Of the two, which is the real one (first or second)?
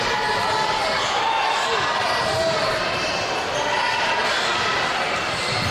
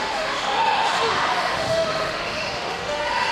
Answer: first